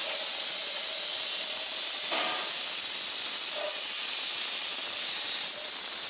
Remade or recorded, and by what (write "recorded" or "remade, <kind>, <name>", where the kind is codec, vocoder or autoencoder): recorded